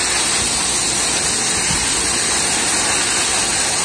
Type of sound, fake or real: real